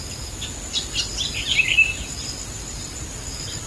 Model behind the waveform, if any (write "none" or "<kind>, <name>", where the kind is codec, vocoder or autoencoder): none